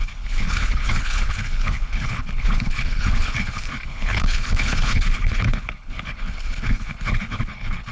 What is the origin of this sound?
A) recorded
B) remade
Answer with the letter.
B